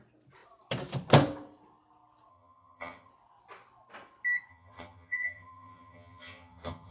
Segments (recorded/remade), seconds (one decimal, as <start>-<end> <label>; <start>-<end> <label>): 0.0-2.3 recorded; 2.3-3.1 remade; 3.1-4.5 recorded; 4.5-6.9 remade